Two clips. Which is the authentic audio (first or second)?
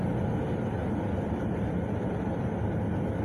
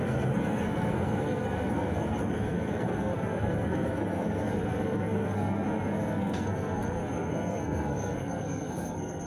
first